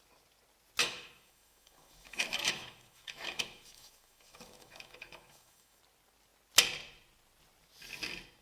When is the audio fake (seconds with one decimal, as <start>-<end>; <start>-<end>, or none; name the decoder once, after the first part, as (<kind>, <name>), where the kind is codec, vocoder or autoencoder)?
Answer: 0.8-5.8 (autoencoder, DAC-VAE)